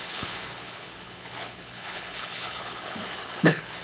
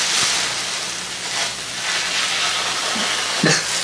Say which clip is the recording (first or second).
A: second